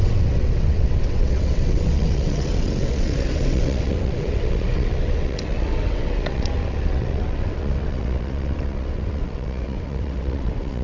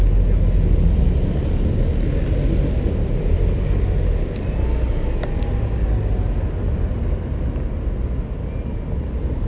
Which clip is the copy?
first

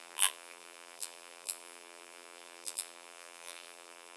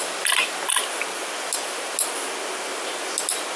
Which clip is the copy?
first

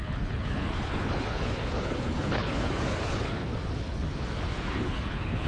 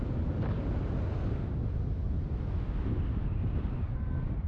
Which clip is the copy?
first